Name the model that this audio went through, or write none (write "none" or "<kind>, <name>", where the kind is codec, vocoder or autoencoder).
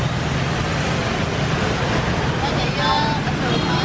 none